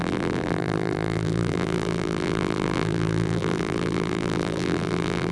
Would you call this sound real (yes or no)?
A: no